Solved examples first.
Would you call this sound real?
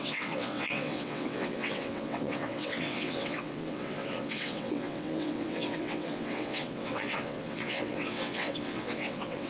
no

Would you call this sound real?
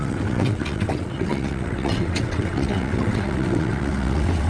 no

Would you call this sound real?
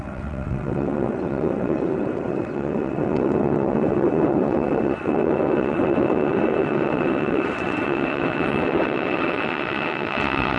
no